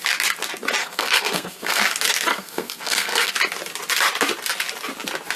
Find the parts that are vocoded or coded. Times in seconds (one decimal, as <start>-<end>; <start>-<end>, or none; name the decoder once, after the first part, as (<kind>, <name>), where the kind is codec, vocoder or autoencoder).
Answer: 0.8-1.8 (codec, SNAC); 2.3-3.3